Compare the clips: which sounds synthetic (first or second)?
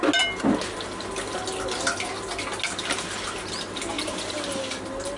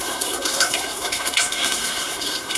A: second